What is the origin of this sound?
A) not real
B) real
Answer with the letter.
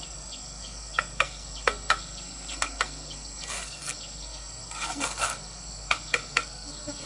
A